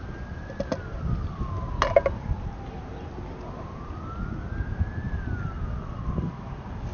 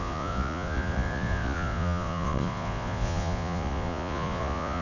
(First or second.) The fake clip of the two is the second